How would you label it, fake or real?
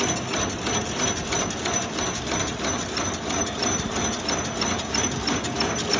real